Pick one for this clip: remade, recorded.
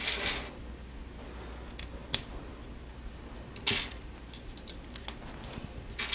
recorded